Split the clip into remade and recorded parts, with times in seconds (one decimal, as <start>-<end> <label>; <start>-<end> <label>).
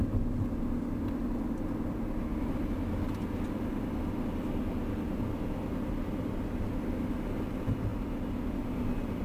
0.0-9.2 recorded